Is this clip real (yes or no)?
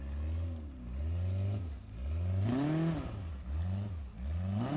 yes